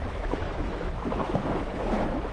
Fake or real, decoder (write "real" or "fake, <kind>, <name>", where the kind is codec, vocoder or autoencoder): fake, autoencoder, DAC-VAE